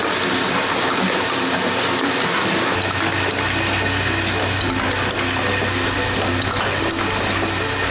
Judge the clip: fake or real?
real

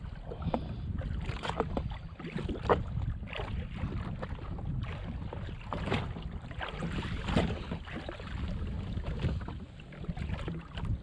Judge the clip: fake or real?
real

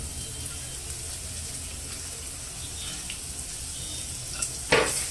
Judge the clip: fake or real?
real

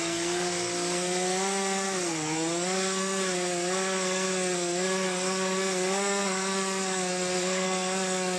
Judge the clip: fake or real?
fake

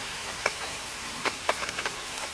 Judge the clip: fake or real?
fake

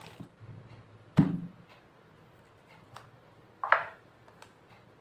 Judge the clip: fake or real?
real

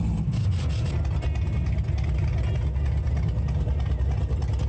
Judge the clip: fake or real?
real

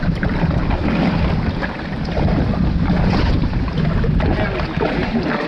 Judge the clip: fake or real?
real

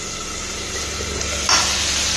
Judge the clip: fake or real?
real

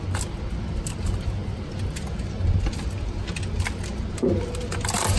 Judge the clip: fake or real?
real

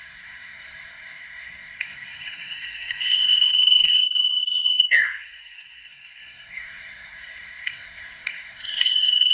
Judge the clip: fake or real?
fake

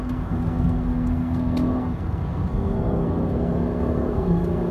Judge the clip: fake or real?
fake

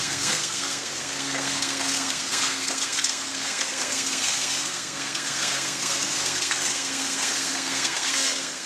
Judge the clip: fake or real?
fake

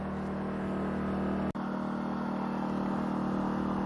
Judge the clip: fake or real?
real